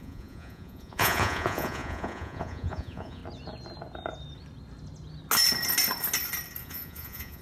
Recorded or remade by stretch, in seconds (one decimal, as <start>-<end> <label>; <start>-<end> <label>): 0.0-3.2 remade; 3.2-6.6 recorded; 6.6-7.4 remade